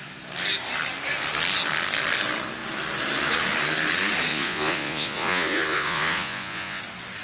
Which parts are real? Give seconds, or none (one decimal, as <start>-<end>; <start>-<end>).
0.0-4.3; 6.8-7.2